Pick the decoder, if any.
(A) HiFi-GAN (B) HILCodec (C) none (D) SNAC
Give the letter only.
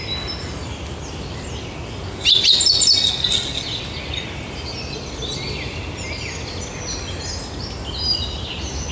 C